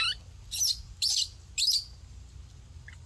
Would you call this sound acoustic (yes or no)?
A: yes